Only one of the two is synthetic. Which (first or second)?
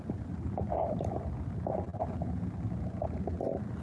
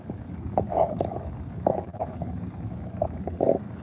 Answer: second